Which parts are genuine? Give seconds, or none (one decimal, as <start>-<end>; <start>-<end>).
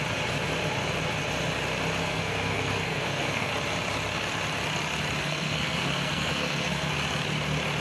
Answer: 0.0-2.0; 3.5-5.2; 6.9-7.8